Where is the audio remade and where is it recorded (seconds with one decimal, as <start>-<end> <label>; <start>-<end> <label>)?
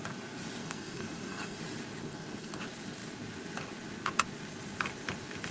0.0-0.6 recorded; 0.6-1.6 remade; 1.6-2.0 recorded; 2.0-2.6 remade; 2.6-5.5 recorded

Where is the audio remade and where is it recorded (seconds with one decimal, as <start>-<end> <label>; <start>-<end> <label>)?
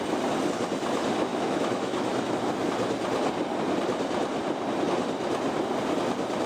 0.0-1.3 recorded; 1.3-2.5 remade; 2.5-6.5 recorded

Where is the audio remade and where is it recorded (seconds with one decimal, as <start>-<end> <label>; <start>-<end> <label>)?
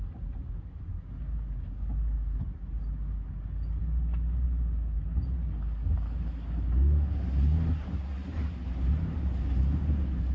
0.0-10.3 recorded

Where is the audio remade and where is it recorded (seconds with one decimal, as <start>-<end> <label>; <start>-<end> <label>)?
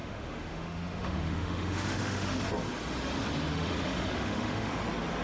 0.0-2.4 remade; 2.4-3.5 recorded; 3.5-4.8 remade; 4.8-5.2 recorded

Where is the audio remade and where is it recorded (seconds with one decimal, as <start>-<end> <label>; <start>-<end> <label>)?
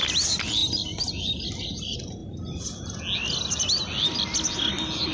0.0-5.1 recorded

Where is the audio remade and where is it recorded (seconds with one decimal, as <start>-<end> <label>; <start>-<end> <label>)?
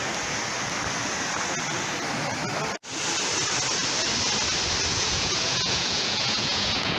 0.0-4.9 recorded; 4.9-7.0 remade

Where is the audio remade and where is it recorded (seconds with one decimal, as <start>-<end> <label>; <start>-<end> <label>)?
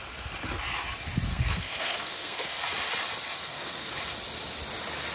0.0-1.3 recorded; 1.3-2.5 remade; 2.5-3.4 recorded; 3.4-4.0 remade; 4.0-5.1 recorded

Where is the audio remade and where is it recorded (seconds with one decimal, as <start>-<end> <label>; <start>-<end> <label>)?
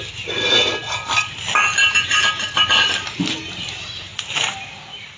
0.0-5.2 recorded